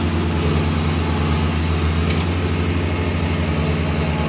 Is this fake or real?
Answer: real